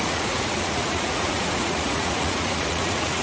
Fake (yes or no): yes